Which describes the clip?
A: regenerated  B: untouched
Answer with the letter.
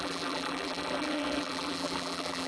A